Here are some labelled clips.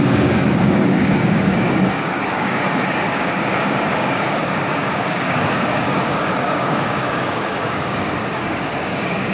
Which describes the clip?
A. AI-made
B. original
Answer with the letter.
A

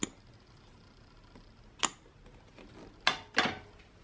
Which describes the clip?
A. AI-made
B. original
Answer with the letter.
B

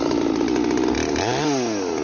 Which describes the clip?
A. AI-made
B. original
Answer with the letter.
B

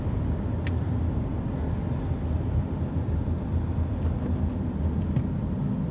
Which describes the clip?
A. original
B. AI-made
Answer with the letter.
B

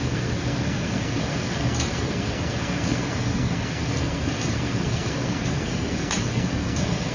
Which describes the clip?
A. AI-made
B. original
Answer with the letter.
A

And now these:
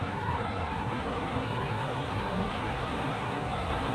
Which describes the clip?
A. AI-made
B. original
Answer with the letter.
A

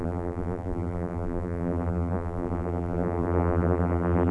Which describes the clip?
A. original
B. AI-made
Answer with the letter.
B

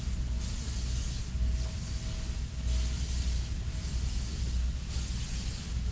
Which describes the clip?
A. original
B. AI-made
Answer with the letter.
A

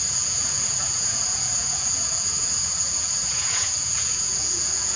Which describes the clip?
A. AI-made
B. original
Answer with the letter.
A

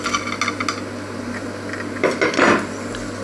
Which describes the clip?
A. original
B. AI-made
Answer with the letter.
A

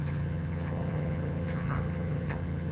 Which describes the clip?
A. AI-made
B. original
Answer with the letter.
A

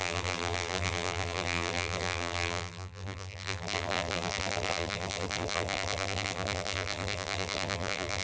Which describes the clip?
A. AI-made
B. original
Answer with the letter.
A